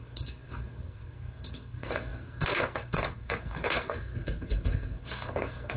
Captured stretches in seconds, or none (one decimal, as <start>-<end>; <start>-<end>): none